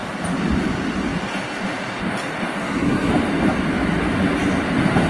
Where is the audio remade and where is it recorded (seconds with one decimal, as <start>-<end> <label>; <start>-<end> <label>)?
0.0-2.6 recorded; 2.6-3.1 remade; 3.1-5.1 recorded